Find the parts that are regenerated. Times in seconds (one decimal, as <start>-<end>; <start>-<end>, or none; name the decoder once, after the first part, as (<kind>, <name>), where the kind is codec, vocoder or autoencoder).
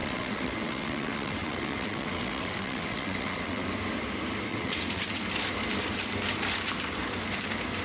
0.0-3.7 (vocoder, WaveNeXt); 4.5-5.2